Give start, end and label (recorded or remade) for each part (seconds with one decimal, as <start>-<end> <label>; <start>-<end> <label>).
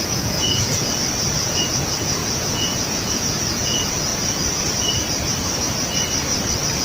0.0-0.9 remade; 0.9-1.4 recorded; 1.4-4.1 remade; 4.1-6.8 recorded